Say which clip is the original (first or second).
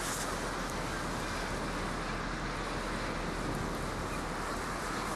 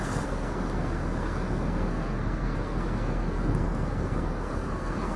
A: first